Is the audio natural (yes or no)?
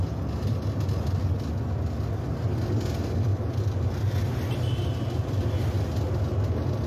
yes